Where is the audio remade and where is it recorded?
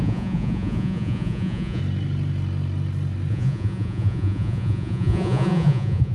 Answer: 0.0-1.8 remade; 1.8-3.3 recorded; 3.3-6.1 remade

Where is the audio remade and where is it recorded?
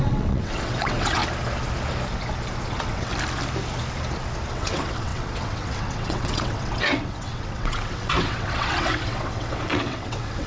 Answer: 0.0-1.2 remade; 1.2-2.7 recorded; 2.7-3.1 remade; 3.1-4.5 recorded; 4.5-10.5 remade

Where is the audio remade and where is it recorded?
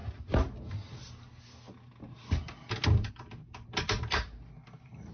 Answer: 0.0-5.1 recorded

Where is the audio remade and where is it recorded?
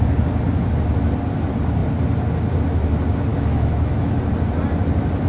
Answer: 0.0-3.3 recorded; 3.3-4.2 remade; 4.2-5.3 recorded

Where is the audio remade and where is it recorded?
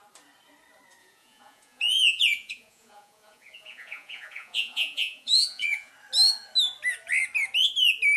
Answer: 0.0-1.0 recorded; 1.0-5.9 remade; 5.9-8.2 recorded